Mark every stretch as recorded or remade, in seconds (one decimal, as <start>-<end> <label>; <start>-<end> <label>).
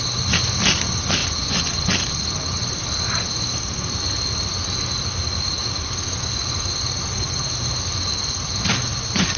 0.0-1.2 recorded; 1.2-1.9 remade; 1.9-9.4 recorded